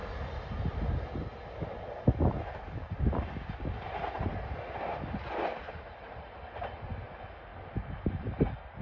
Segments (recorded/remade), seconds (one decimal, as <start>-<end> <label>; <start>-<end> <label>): 0.0-8.8 recorded